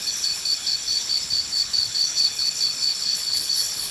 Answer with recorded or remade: remade